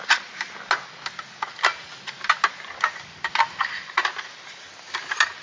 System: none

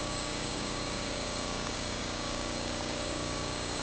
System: codec, DAC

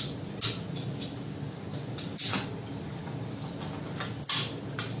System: none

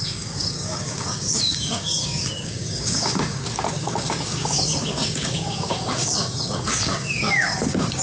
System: codec, DAC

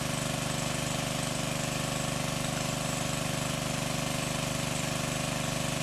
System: none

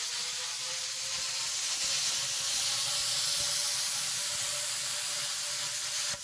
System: none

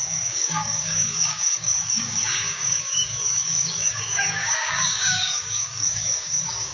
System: codec, DAC